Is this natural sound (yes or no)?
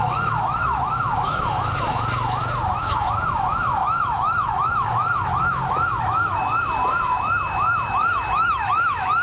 no